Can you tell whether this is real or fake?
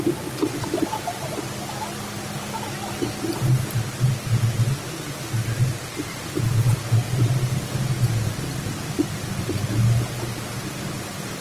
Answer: real